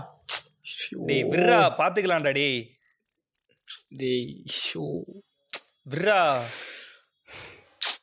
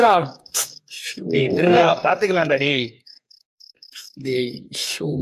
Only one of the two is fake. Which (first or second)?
second